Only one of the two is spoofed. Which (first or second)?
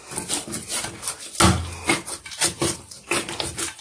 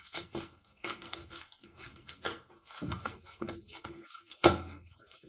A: second